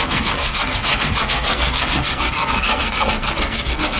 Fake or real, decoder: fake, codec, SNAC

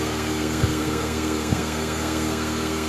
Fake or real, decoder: fake, codec, SNAC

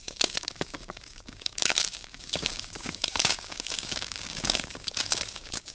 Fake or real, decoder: fake, codec, DAC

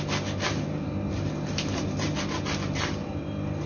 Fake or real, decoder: real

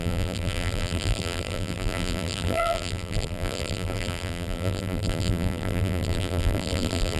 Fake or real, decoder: fake, vocoder, BigVGAN v2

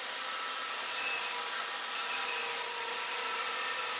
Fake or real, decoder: real